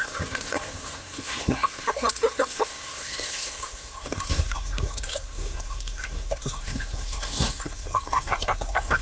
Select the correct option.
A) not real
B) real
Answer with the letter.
A